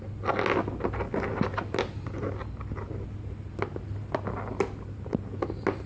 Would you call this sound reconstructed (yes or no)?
no